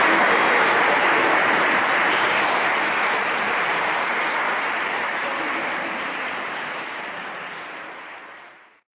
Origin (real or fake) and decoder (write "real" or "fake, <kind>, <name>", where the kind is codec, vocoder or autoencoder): fake, vocoder, BigVGAN v2